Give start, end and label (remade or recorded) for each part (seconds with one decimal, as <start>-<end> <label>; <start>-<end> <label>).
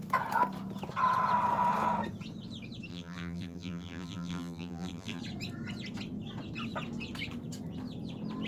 0.0-2.9 recorded; 2.9-5.2 remade; 5.2-8.5 recorded